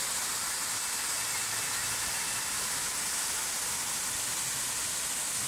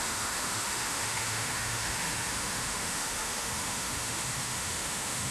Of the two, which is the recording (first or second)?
first